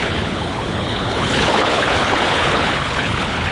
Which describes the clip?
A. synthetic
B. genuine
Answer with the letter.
A